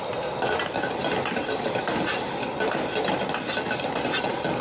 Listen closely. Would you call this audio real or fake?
real